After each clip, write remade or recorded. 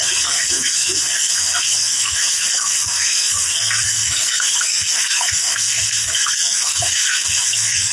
remade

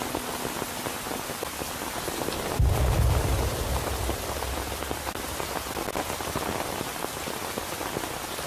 recorded